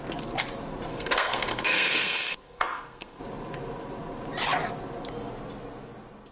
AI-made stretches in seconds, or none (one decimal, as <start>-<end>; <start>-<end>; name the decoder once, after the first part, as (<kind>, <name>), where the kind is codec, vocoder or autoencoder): 0.9-3.2 (codec, SNAC)